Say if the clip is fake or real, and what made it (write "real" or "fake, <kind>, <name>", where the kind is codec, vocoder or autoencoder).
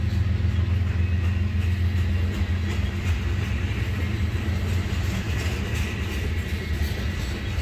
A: real